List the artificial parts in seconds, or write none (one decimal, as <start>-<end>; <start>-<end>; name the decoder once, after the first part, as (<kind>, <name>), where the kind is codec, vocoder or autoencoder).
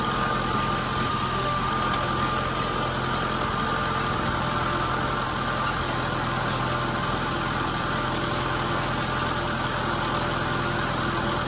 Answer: 1.1-1.7 (autoencoder, DAC-VAE)